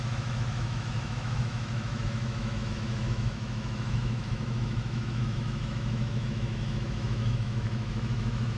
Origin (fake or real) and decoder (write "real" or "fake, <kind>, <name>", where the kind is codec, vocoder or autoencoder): fake, autoencoder, DAC-VAE